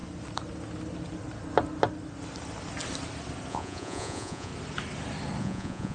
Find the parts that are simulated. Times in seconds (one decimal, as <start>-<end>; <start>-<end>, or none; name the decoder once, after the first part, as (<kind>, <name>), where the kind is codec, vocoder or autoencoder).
3.5-4.5 (vocoder, Vocos); 5.4-5.9